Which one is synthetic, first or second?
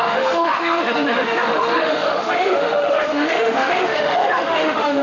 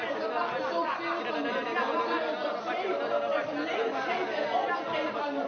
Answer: first